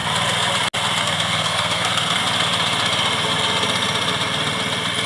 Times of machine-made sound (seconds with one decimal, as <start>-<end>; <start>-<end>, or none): 1.0-2.2